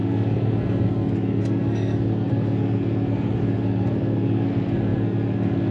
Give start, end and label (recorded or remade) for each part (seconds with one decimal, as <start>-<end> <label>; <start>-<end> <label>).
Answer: 0.0-5.7 remade